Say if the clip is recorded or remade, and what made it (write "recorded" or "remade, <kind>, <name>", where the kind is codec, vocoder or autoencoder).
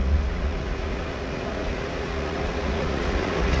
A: remade, vocoder, Vocos